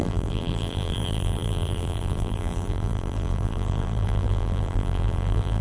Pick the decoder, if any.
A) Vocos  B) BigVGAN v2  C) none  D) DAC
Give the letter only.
B